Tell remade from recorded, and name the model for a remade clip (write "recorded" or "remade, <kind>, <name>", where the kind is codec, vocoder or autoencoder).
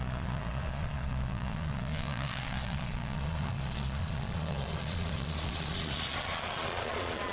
remade, vocoder, Vocos